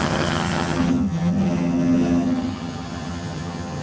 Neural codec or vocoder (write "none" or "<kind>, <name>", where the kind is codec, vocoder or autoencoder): vocoder, HiFi-GAN